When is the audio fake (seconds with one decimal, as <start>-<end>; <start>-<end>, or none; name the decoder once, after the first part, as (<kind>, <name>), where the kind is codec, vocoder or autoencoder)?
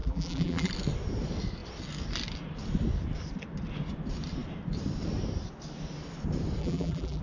0.0-0.7 (vocoder, BigVGAN v2); 6.6-7.2